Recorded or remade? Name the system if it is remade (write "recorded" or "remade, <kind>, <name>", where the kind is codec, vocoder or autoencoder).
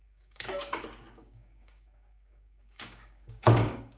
remade, codec, DAC